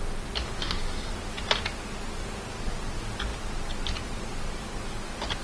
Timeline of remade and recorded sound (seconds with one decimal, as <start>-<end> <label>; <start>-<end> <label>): 0.0-0.6 recorded; 0.6-1.1 remade; 1.1-5.4 recorded